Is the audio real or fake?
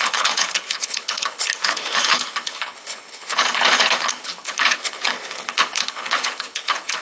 fake